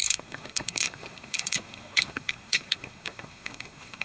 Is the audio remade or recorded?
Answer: remade